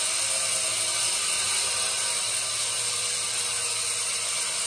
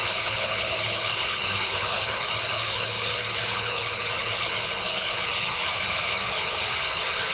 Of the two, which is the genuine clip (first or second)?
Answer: first